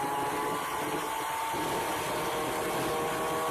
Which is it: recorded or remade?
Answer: recorded